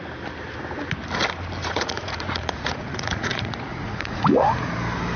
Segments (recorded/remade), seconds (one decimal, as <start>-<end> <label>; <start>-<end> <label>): 0.0-1.6 recorded; 1.6-4.7 remade; 4.7-5.2 recorded